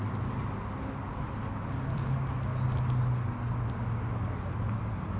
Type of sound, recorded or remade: recorded